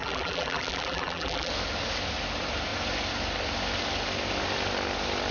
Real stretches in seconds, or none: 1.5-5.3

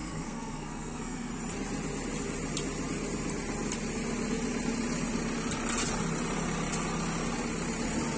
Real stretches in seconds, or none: 1.3-8.2

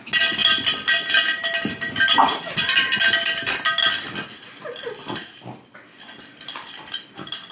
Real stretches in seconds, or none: 0.0-7.5

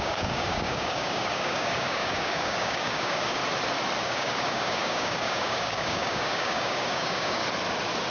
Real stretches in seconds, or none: 3.4-4.0; 7.4-8.1

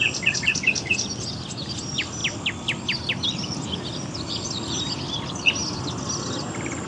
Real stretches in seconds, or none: 0.0-6.9